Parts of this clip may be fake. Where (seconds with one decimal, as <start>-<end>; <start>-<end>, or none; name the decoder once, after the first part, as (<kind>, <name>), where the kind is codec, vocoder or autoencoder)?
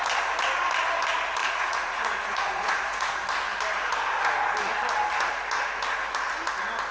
1.4-3.2 (vocoder, Vocos)